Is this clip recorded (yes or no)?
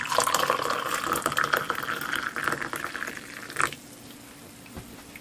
yes